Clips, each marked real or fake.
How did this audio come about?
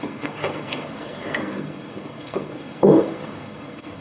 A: fake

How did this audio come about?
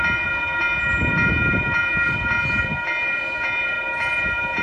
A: real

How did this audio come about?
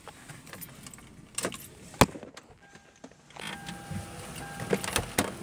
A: real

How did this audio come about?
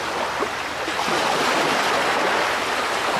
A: real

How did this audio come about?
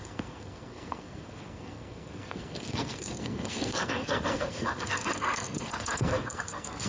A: fake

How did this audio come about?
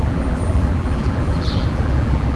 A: fake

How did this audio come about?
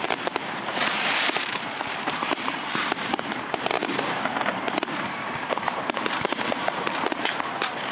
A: fake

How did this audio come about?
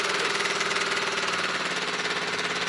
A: real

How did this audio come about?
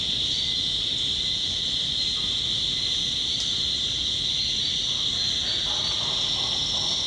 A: real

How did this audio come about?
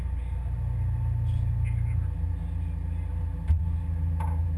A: real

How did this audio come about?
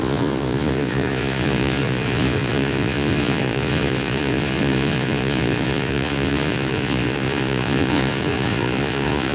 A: fake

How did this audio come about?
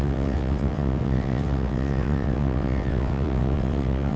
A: fake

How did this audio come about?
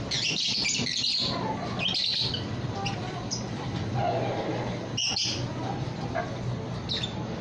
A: real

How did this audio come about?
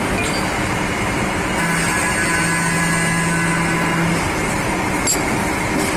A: real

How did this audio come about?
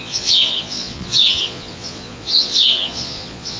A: fake